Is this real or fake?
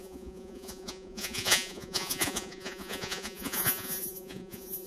fake